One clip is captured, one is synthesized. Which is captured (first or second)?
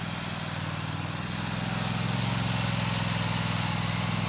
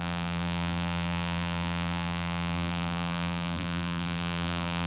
first